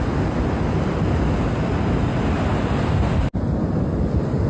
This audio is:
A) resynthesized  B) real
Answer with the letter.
B